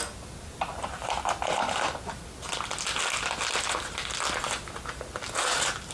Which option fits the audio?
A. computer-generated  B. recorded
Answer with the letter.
B